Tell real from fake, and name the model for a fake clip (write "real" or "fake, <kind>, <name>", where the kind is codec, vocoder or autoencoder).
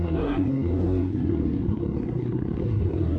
fake, codec, SNAC